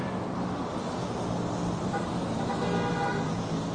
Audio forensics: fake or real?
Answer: real